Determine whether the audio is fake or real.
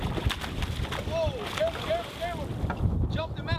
real